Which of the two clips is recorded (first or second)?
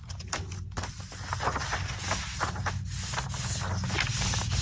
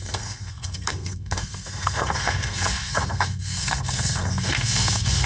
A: first